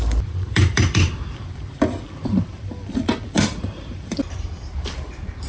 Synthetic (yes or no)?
yes